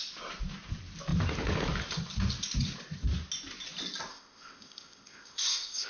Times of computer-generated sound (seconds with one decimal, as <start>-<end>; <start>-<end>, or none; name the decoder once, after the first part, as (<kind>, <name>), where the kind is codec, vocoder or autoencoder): 4.1-5.9 (codec, ZipCodec)